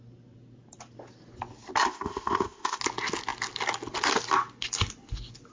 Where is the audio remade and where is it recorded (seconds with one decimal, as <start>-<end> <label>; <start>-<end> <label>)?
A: 0.0-1.8 recorded; 1.8-2.8 remade; 2.8-5.5 recorded